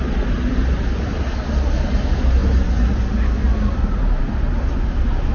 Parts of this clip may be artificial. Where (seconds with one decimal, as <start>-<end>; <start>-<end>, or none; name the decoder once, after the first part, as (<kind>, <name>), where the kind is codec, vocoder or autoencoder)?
none